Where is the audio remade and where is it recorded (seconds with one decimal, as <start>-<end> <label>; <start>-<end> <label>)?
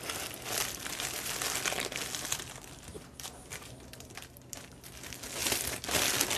0.0-5.4 recorded; 5.4-6.0 remade; 6.0-6.4 recorded